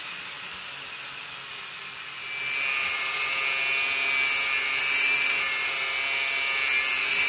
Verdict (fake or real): real